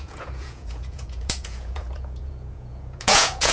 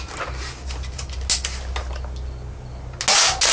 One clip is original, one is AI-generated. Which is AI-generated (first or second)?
first